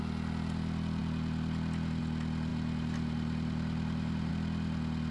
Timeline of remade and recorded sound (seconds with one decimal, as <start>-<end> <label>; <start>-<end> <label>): 0.0-2.5 recorded; 2.5-4.3 remade; 4.3-5.1 recorded